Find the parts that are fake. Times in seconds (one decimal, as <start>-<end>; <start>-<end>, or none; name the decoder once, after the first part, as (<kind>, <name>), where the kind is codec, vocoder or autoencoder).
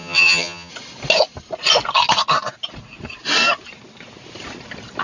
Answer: 0.0-0.7 (vocoder, HiFi-GAN)